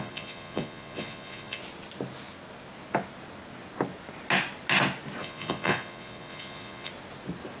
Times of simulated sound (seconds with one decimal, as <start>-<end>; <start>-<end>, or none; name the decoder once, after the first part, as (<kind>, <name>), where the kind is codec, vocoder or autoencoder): 0.0-1.6 (vocoder, Vocos); 5.2-6.9